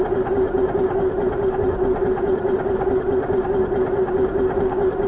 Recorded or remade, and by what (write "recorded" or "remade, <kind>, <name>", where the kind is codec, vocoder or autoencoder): recorded